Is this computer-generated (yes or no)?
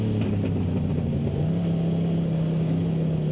no